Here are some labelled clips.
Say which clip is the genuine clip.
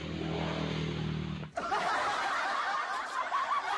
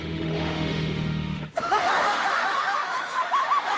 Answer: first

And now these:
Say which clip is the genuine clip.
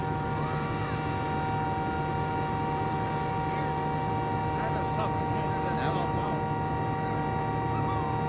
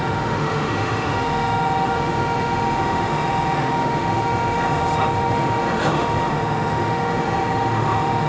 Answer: first